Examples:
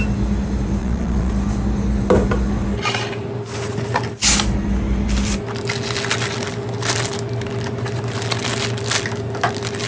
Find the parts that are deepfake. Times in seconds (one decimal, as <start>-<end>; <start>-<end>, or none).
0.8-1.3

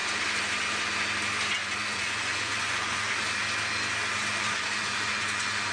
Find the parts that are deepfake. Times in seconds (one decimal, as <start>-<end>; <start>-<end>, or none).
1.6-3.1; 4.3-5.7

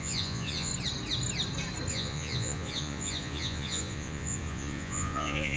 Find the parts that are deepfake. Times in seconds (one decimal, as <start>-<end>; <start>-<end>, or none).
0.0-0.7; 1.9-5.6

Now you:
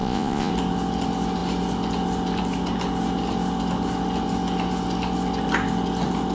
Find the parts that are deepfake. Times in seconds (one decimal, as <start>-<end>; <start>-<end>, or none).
0.0-0.5